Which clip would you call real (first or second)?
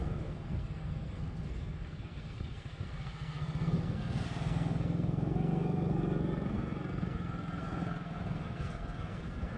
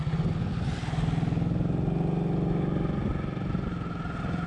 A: second